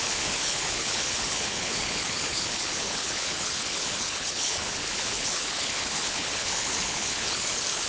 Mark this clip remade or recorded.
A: remade